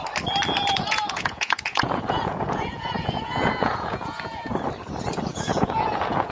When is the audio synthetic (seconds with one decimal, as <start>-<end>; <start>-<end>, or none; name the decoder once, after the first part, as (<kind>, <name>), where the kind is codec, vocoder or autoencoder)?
0.7-4.5 (vocoder, Vocos); 5.3-6.3